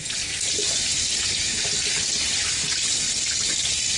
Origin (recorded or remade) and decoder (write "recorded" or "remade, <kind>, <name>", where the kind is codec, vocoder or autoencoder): recorded